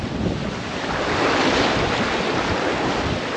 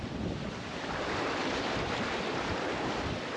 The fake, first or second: second